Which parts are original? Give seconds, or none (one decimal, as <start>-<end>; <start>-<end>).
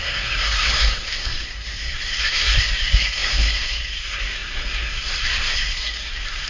none